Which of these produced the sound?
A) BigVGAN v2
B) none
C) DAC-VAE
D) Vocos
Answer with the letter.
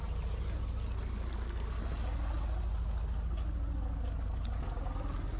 B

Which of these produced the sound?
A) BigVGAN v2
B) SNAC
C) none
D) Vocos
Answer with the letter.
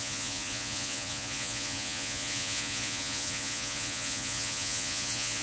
D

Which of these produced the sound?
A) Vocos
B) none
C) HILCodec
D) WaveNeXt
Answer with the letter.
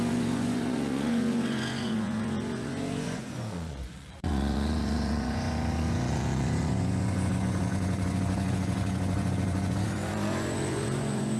A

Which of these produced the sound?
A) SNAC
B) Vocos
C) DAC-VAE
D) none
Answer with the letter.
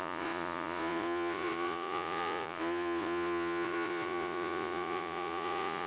B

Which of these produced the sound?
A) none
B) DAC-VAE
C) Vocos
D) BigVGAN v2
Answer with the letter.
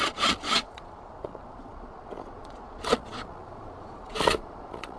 C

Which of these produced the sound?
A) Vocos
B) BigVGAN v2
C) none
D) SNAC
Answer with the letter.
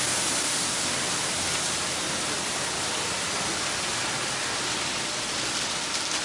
C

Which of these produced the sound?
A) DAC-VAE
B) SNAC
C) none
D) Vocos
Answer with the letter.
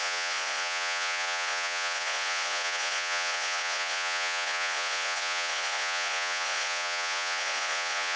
D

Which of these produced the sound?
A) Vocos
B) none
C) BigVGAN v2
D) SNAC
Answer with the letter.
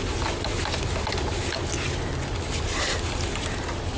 B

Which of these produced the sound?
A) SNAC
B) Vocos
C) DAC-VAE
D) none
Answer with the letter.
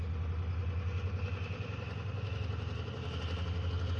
D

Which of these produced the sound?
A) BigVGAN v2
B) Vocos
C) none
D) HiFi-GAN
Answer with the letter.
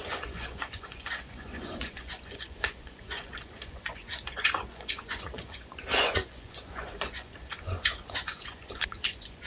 B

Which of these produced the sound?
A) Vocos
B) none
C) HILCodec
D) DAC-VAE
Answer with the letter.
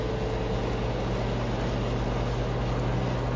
B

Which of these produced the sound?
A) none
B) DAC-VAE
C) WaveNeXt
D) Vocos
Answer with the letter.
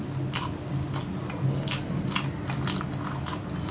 A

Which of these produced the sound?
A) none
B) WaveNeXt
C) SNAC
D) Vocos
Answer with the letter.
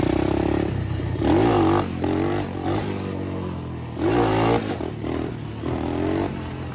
A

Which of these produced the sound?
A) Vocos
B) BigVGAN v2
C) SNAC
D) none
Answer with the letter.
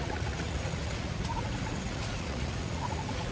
A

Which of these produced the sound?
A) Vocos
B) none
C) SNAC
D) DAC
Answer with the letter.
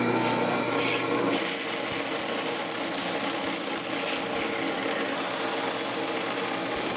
B